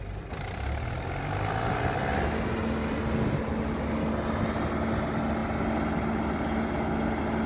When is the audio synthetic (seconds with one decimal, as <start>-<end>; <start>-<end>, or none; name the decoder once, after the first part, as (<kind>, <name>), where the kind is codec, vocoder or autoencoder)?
none